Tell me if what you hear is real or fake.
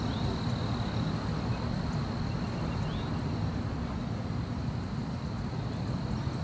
real